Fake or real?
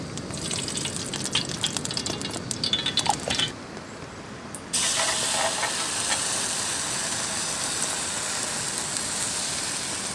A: real